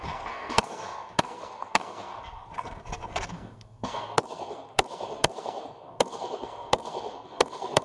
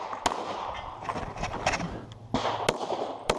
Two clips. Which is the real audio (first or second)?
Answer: second